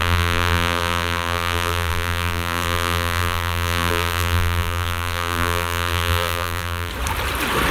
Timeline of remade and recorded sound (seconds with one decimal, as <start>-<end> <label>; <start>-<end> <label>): 0.0-6.9 remade; 6.9-7.7 recorded